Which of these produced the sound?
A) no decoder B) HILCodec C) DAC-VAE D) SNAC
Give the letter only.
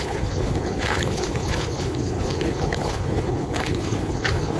B